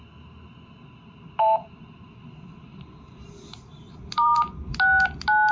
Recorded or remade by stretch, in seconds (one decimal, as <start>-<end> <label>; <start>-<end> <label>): 0.0-1.4 recorded; 1.4-4.7 remade; 4.7-5.5 recorded